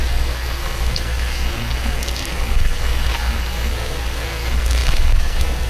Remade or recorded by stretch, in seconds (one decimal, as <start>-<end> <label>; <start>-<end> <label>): 0.0-5.7 remade